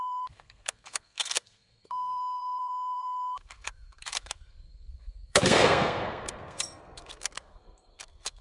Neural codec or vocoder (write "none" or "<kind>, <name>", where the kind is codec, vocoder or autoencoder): codec, SNAC